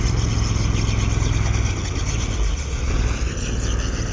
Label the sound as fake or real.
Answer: real